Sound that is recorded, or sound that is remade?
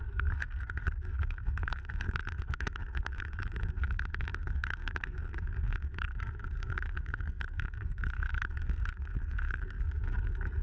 remade